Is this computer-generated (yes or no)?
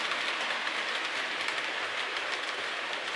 no